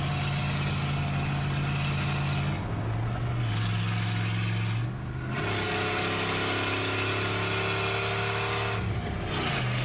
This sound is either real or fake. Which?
real